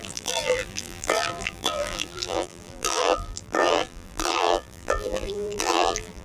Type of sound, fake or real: fake